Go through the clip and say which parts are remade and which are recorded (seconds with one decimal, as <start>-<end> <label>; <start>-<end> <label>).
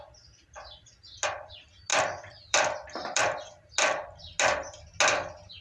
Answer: 0.0-1.9 recorded; 1.9-3.2 remade; 3.2-5.6 recorded